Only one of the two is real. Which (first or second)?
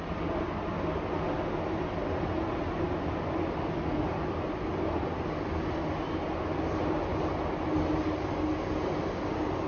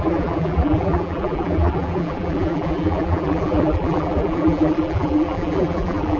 first